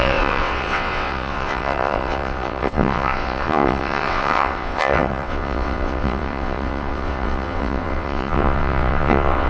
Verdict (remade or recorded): remade